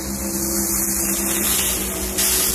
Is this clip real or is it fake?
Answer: real